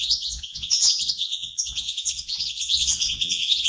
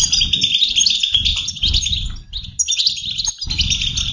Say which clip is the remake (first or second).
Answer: first